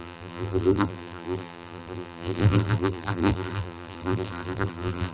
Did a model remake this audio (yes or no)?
yes